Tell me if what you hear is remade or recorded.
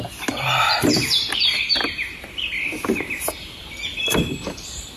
recorded